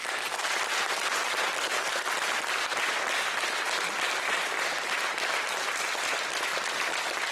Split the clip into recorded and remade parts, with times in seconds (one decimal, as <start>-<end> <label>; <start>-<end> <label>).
0.0-7.3 recorded

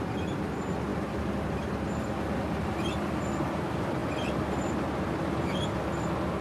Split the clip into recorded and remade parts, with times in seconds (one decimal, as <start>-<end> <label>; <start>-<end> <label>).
0.0-6.4 recorded

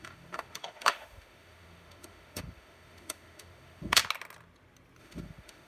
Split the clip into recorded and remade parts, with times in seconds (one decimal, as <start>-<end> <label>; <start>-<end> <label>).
0.0-4.0 remade; 4.0-5.0 recorded; 5.0-5.7 remade

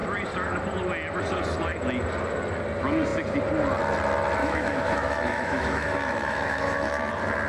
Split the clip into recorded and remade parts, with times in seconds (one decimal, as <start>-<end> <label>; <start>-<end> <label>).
0.0-4.4 recorded; 4.4-7.1 remade; 7.1-7.5 recorded

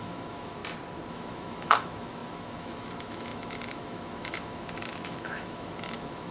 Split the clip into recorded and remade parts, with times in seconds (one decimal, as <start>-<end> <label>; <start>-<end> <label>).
0.0-0.6 remade; 0.6-1.1 recorded; 1.1-6.3 remade

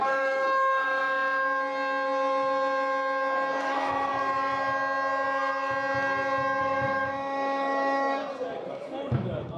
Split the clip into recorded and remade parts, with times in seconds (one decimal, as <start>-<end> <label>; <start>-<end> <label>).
0.0-1.0 remade; 1.0-3.6 recorded; 3.6-4.1 remade; 4.1-6.6 recorded; 6.6-8.2 remade; 8.2-8.7 recorded; 8.7-9.6 remade

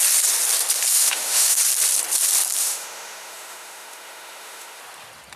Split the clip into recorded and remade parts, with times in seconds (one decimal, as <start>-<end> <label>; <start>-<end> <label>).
0.0-0.9 recorded; 0.9-1.6 remade; 1.6-2.6 recorded; 2.6-4.8 remade; 4.8-5.4 recorded